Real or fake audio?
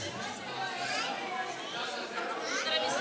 real